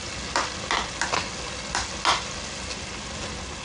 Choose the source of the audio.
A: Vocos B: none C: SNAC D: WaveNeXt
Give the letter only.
B